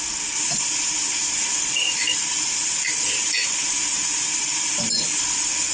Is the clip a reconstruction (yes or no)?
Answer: no